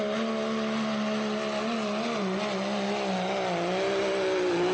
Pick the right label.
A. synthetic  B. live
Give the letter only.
B